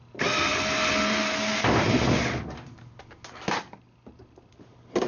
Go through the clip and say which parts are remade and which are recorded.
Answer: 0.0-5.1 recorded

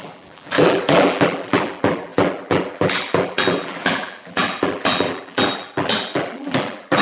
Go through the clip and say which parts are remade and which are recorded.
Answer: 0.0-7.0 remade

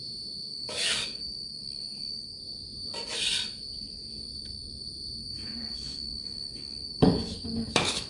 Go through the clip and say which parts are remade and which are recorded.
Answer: 0.0-0.5 recorded; 0.5-2.4 remade; 2.4-5.2 recorded; 5.2-8.1 remade

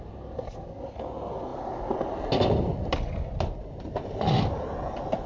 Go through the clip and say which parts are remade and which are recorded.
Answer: 0.0-5.3 recorded

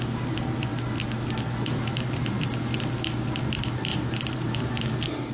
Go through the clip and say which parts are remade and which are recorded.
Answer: 0.0-3.9 recorded; 3.9-4.8 remade; 4.8-5.3 recorded

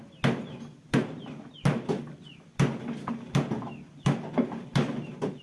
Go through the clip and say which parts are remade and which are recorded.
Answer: 0.0-5.4 recorded

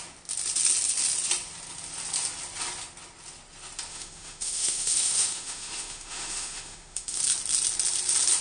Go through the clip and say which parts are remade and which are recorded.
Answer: 0.0-3.9 recorded; 3.9-7.2 remade; 7.2-8.4 recorded